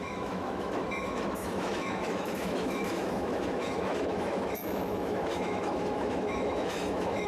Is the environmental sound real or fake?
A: fake